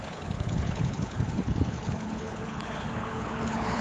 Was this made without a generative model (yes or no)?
no